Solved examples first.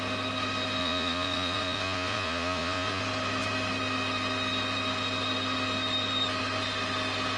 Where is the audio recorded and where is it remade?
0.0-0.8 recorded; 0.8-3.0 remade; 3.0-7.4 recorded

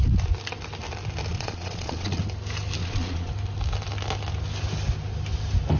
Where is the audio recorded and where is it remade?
0.0-1.3 recorded; 1.3-2.2 remade; 2.2-2.8 recorded; 2.8-3.3 remade; 3.3-5.8 recorded

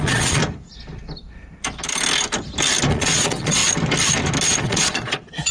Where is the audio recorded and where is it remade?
0.0-0.4 remade; 0.4-2.9 recorded; 2.9-3.6 remade; 3.6-4.6 recorded; 4.6-5.5 remade

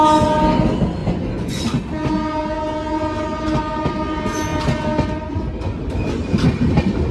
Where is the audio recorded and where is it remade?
0.0-1.0 recorded; 1.0-1.6 remade; 1.6-7.1 recorded

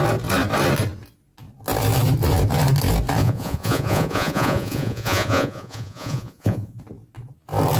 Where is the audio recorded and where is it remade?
0.0-3.2 recorded; 3.2-6.8 remade; 6.8-7.8 recorded

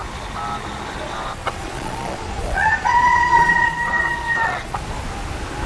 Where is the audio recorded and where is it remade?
0.0-1.4 recorded; 1.4-4.8 remade; 4.8-5.7 recorded